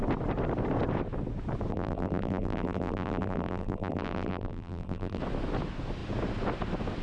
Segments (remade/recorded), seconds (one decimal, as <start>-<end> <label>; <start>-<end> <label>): 0.0-1.7 recorded; 1.7-5.2 remade; 5.2-7.0 recorded